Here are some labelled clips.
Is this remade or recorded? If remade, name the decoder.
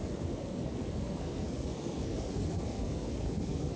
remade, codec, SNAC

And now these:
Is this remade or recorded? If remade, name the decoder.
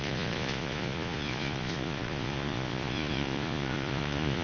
remade, vocoder, Vocos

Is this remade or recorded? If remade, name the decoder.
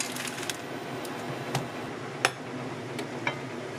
recorded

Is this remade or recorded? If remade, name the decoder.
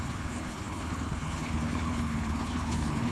remade, codec, HILCodec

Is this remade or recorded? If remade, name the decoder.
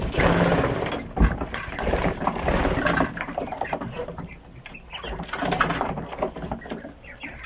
recorded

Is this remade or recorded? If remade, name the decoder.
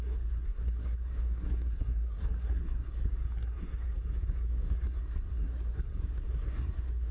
remade, codec, SNAC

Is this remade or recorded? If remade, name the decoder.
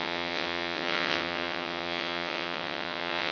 remade, vocoder, WaveNeXt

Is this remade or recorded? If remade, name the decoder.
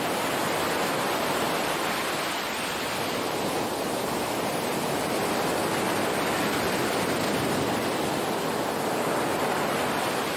recorded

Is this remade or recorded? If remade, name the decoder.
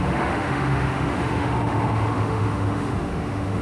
remade, autoencoder, DAC-VAE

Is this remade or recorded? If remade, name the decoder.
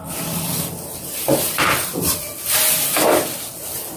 recorded